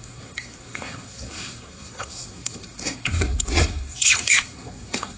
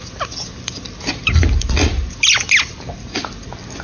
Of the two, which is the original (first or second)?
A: second